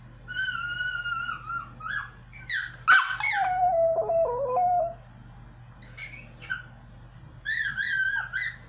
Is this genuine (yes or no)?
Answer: yes